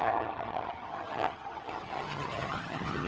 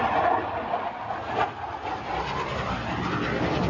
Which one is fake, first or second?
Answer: first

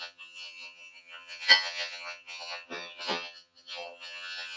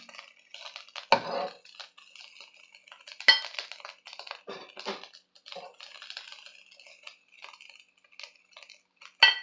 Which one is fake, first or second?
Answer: first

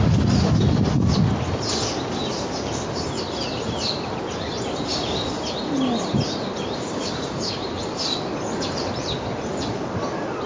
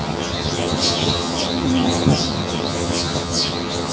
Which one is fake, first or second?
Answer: second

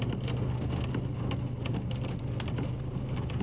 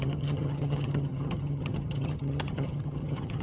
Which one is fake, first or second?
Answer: second